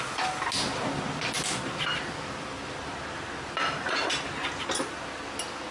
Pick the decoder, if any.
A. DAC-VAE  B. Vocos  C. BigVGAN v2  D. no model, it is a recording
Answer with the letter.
D